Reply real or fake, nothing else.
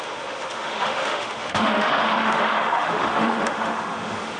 fake